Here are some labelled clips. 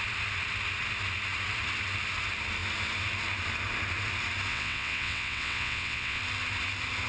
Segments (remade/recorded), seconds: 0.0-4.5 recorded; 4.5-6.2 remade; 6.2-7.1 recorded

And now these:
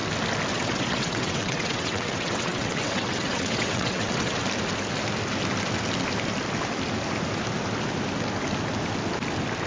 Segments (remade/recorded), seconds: 0.0-0.5 recorded; 0.5-4.4 remade; 4.4-9.7 recorded

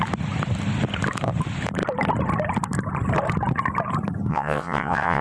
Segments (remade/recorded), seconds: 0.0-4.3 recorded; 4.3-5.2 remade

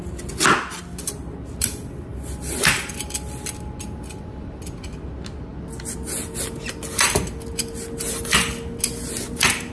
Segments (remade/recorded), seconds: 0.0-9.7 recorded